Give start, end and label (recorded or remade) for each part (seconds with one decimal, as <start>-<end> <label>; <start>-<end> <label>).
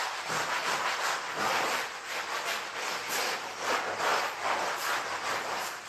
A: 0.0-5.9 recorded